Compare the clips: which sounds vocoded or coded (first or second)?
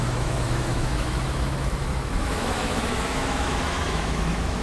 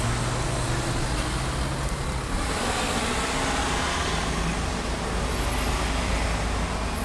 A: first